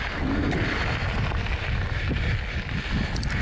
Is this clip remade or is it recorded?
recorded